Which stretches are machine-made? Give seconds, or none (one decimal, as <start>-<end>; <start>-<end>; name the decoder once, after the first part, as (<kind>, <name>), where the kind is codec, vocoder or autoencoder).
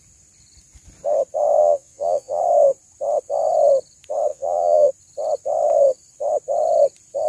1.6-2.4 (vocoder, Vocos); 4.3-4.9